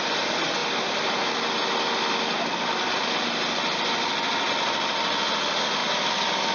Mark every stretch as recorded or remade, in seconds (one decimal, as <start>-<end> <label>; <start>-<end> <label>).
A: 0.0-6.5 recorded